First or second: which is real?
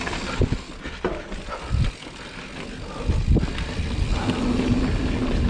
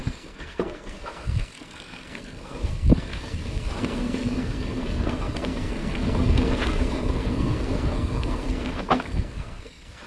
first